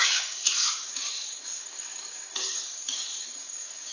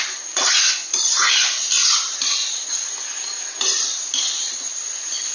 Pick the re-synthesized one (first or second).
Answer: first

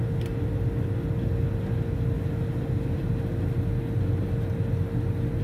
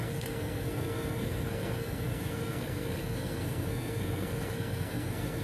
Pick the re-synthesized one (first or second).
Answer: second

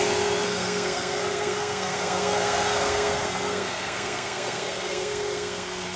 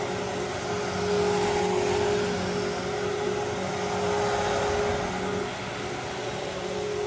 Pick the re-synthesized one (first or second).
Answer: first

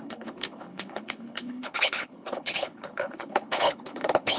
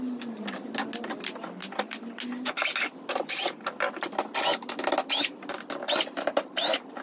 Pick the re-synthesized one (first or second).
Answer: first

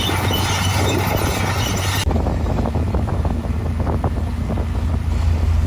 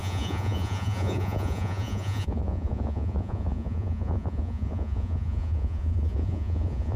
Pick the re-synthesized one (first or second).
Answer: second